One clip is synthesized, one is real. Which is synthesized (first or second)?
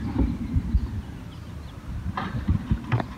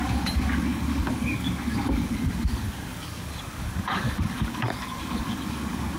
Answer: second